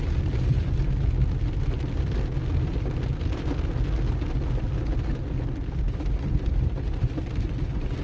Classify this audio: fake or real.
real